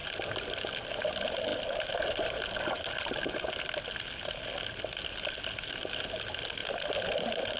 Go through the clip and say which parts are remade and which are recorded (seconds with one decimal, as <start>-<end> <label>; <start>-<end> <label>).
0.0-7.6 recorded